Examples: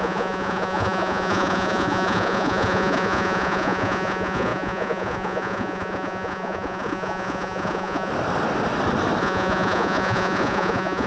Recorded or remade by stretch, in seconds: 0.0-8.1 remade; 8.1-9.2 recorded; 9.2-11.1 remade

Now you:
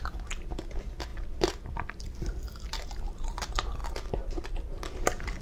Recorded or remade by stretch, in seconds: 0.0-5.4 recorded

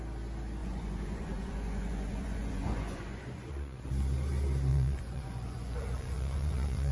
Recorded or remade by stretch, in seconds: 0.0-0.6 recorded; 0.6-3.9 remade; 3.9-4.7 recorded; 4.7-6.9 remade